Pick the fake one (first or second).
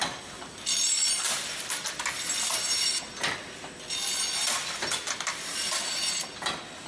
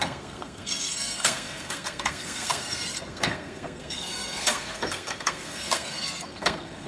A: second